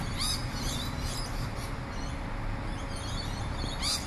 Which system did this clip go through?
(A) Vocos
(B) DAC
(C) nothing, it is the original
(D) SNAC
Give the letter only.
C